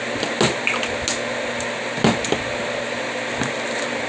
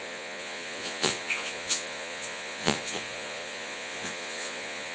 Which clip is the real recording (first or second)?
first